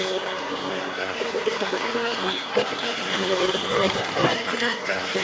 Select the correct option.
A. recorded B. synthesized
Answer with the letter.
B